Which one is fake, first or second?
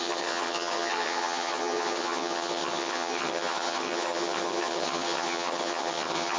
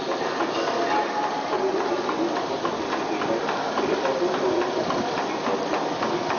first